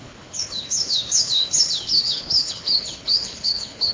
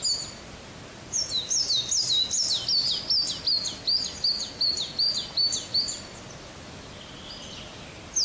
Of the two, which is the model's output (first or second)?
first